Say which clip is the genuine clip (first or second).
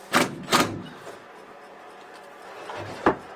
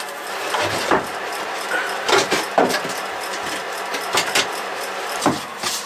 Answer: first